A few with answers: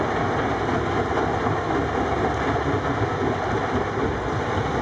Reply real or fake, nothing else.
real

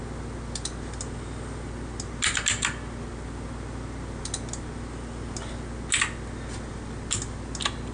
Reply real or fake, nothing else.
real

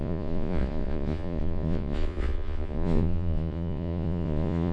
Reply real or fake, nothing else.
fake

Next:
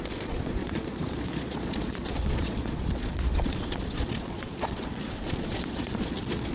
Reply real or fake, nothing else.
fake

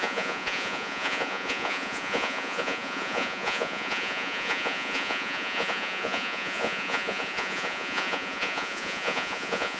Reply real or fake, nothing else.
fake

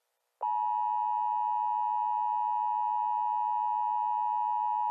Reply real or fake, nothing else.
real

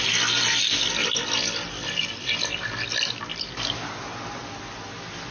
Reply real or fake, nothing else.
real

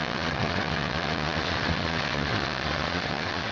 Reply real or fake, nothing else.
fake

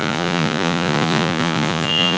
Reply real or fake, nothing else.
fake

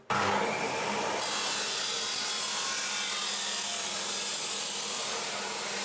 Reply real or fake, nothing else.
real